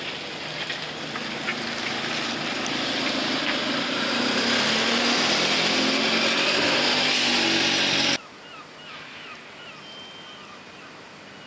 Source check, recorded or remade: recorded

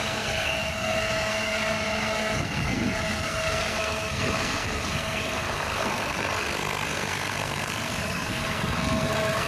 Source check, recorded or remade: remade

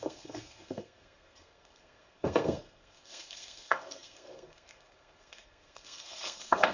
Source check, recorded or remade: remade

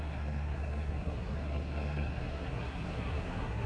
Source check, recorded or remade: remade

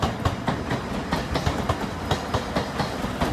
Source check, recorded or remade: recorded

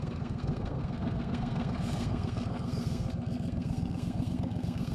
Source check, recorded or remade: remade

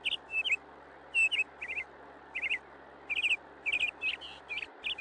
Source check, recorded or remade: recorded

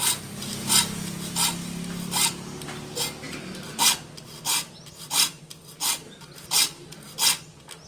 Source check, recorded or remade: recorded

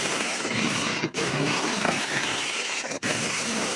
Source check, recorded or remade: remade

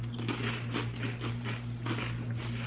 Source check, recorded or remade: recorded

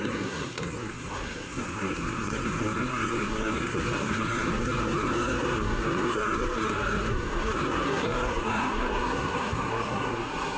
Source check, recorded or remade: remade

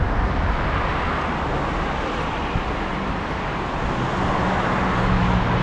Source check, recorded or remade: recorded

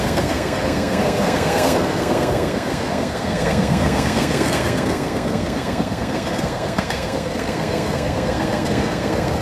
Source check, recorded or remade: remade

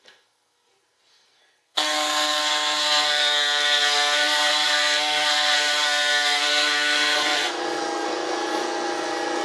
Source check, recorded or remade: remade